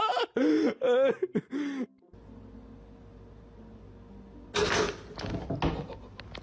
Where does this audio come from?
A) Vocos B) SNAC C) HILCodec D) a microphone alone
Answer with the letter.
D